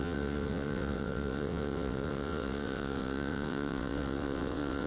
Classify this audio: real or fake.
fake